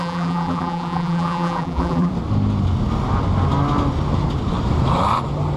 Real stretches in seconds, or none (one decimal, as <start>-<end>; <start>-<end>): 2.1-5.6